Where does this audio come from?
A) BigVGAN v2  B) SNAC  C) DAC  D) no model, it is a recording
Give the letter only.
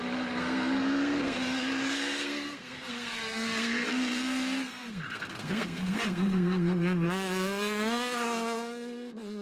B